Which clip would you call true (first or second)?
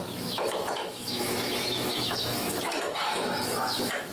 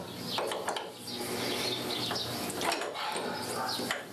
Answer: second